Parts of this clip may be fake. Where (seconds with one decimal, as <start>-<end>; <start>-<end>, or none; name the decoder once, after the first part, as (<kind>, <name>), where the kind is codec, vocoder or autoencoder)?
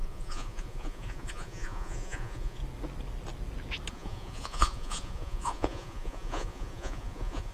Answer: 0.0-2.6 (vocoder, Vocos); 3.9-7.5